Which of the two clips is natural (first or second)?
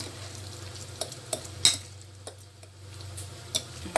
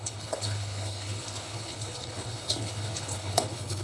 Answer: first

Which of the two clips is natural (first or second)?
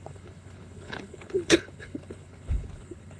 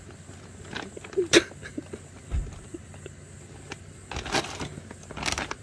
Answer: second